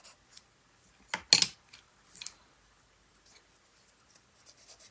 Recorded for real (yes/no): yes